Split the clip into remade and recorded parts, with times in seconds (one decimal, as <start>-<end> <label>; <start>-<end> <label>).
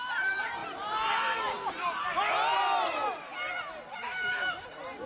0.0-0.6 remade; 0.6-3.7 recorded; 3.7-5.1 remade